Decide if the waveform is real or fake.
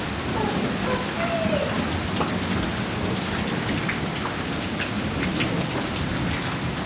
real